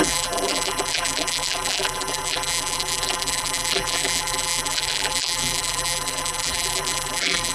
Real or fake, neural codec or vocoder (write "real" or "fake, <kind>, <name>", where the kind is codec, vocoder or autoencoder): fake, vocoder, BigVGAN v2